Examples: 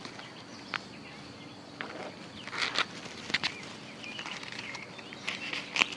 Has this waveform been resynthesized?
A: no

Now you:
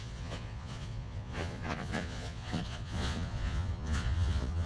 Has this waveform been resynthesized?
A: yes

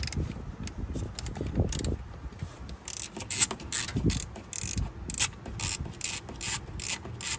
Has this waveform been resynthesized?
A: no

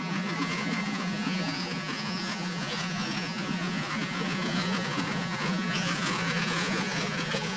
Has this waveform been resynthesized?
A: yes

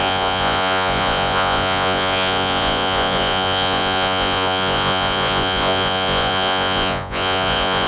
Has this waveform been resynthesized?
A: yes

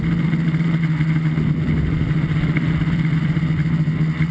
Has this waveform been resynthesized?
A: no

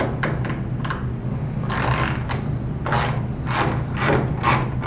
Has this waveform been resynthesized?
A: no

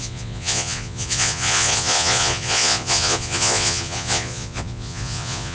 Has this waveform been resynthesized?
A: yes